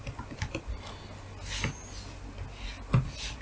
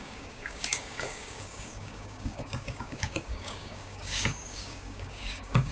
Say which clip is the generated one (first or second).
second